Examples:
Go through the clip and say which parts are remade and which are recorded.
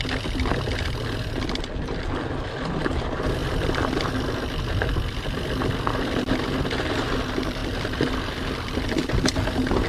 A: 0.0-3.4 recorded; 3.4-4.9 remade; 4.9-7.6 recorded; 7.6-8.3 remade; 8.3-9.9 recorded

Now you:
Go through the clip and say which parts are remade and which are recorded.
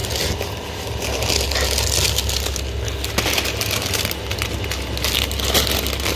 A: 0.0-6.2 recorded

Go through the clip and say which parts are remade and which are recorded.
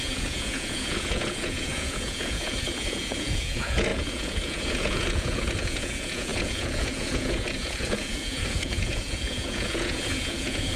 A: 0.0-10.8 remade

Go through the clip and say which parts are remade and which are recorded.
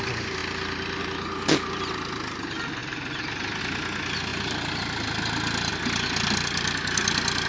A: 0.0-7.5 recorded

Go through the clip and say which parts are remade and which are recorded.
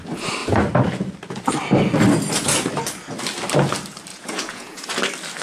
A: 0.0-4.1 recorded; 4.1-4.9 remade; 4.9-5.4 recorded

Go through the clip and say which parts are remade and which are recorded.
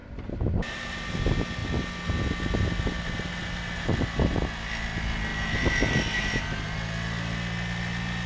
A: 0.0-1.0 remade; 1.0-5.3 recorded; 5.3-6.4 remade; 6.4-8.3 recorded